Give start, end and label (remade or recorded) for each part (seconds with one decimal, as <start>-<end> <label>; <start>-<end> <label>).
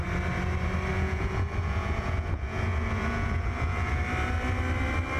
0.0-0.9 recorded; 0.9-4.0 remade; 4.0-5.2 recorded